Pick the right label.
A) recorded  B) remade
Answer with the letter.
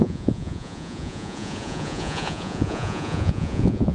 B